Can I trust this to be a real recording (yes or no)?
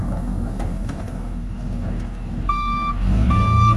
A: no